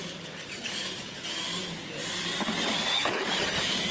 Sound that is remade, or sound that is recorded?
recorded